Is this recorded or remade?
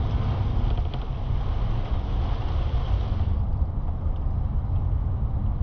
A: recorded